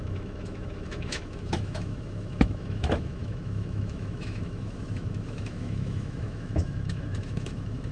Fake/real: fake